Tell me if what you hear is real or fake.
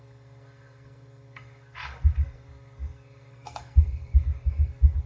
fake